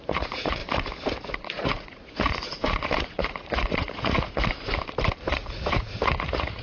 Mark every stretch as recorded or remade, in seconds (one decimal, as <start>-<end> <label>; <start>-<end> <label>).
0.0-0.6 remade; 0.6-1.1 recorded; 1.1-4.4 remade; 4.4-5.3 recorded; 5.3-6.6 remade